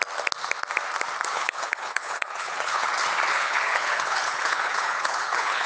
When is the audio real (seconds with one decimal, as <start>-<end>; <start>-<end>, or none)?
0.0-1.3; 2.9-3.3